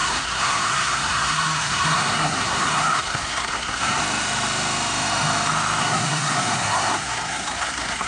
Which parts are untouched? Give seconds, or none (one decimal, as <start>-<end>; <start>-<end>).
4.0-5.8